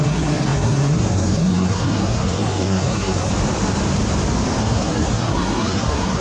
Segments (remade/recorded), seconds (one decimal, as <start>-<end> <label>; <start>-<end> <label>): 0.0-3.3 remade; 3.3-4.6 recorded; 4.6-6.2 remade